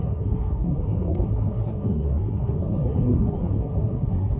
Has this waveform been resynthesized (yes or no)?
yes